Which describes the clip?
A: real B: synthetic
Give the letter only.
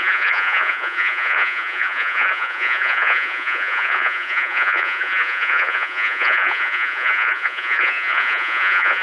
B